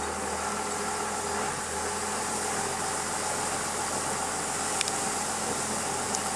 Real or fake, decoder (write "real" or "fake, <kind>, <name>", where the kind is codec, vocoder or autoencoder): real